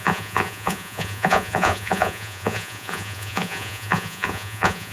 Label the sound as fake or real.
fake